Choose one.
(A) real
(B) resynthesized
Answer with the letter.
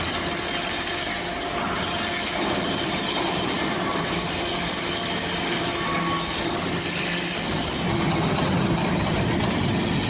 A